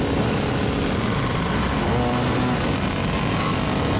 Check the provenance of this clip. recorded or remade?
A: recorded